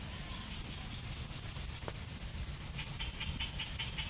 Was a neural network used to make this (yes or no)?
no